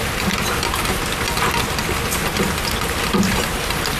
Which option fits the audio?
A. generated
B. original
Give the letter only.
B